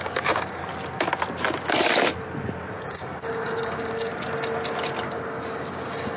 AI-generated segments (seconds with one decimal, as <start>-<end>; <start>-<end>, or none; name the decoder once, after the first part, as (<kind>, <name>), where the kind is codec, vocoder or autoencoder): 0.0-0.6 (codec, DAC); 2.7-4.1; 5.3-6.2